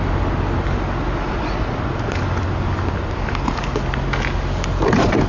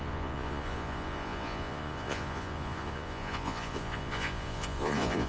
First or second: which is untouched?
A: first